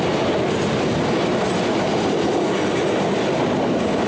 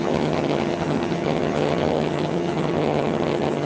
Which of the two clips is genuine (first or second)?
first